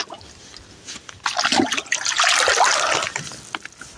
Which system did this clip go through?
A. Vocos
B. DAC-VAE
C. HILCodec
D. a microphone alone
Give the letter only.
D